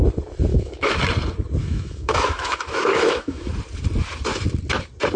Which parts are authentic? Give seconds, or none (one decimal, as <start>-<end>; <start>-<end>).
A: 0.0-0.5; 1.0-1.6; 3.5-5.2